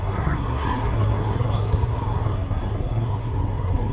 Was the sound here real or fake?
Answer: fake